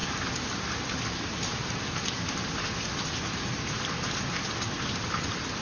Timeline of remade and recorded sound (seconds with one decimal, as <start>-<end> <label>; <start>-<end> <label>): 0.0-5.6 recorded